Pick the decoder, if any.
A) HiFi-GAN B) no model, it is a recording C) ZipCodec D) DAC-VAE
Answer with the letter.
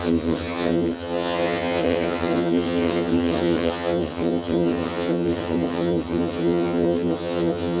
A